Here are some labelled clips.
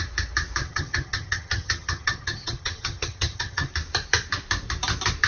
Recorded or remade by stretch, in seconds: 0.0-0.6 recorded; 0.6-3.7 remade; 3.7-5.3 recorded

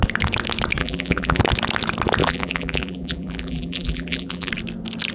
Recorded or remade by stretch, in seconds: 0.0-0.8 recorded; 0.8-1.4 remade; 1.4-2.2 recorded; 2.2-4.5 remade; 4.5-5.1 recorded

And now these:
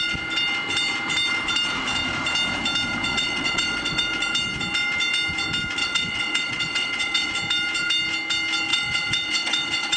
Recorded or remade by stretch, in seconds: 0.0-3.1 recorded; 3.1-4.0 remade; 4.0-5.8 recorded; 5.8-7.3 remade; 7.3-8.7 recorded; 8.7-10.0 remade

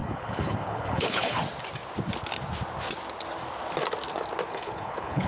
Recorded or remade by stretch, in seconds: 0.0-1.4 remade; 1.4-4.5 recorded; 4.5-5.3 remade

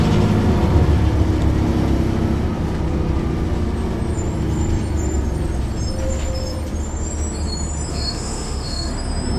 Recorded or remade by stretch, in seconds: 0.0-7.9 recorded; 7.9-8.9 remade; 8.9-9.4 recorded

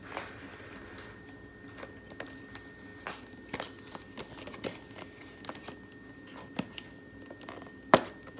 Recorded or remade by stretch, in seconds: 0.0-8.4 recorded

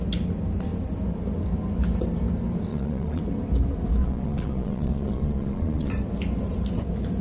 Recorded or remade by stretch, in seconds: 0.0-2.7 recorded; 2.7-3.2 remade; 3.2-4.0 recorded; 4.0-5.9 remade; 5.9-7.2 recorded

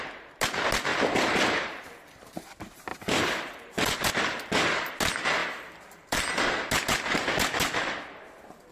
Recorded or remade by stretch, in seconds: 0.0-0.9 recorded; 0.9-2.4 remade; 2.4-2.9 recorded; 2.9-4.1 remade; 4.1-5.4 recorded; 5.4-6.7 remade; 6.7-8.7 recorded